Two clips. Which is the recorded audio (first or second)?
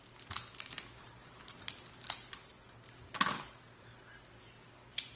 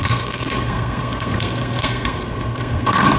first